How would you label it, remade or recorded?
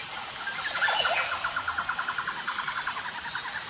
recorded